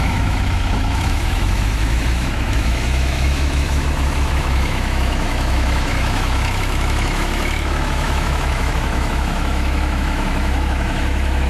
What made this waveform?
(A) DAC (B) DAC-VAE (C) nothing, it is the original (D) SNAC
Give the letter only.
B